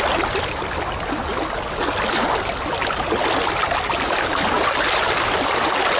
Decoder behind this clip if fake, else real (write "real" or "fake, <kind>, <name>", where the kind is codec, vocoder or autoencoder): real